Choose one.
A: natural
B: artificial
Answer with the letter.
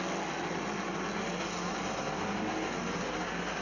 A